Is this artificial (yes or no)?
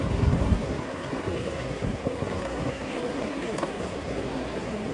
yes